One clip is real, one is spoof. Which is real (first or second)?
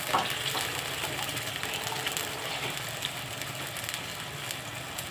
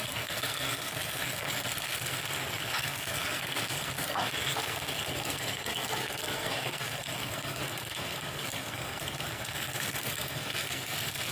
first